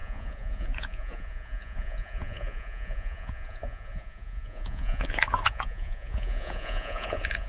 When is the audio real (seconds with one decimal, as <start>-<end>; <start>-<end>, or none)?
none